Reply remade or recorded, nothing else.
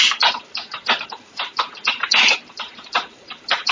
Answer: remade